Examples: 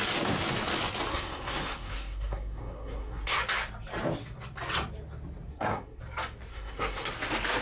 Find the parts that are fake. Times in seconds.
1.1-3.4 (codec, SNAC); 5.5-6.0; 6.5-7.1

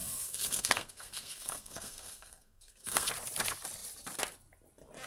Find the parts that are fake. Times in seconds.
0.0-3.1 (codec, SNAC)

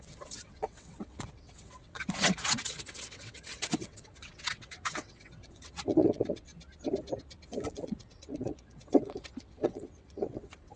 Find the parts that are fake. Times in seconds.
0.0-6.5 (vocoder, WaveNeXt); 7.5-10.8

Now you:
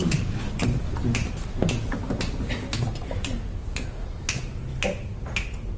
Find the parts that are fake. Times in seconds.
none